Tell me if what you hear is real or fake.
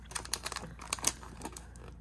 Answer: real